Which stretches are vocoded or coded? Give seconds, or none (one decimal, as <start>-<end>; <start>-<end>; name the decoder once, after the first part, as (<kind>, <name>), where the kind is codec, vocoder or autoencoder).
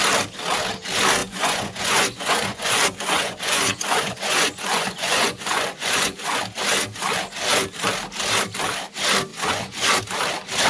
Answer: 1.2-6.4 (vocoder, Vocos); 9.3-10.0